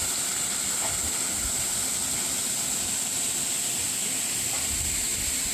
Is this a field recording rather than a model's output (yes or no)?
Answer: yes